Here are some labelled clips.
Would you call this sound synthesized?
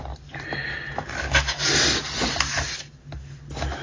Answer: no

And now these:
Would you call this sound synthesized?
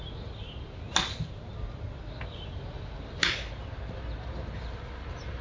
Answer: no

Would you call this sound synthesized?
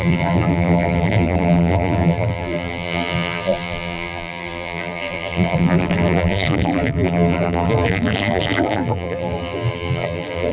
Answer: yes